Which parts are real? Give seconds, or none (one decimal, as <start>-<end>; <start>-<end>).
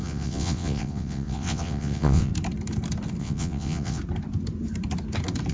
2.3-3.2; 4.0-5.5